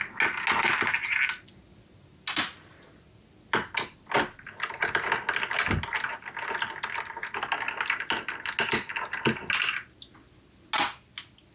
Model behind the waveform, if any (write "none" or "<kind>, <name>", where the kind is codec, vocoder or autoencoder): none